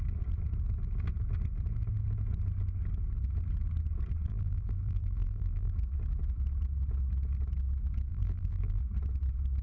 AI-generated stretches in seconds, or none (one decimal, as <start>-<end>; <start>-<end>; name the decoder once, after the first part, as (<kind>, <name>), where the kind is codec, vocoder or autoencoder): 4.3-5.7 (vocoder, BigVGAN v2); 8.1-8.8